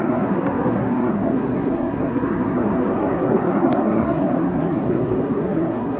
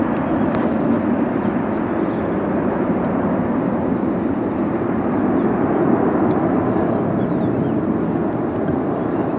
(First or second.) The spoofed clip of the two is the first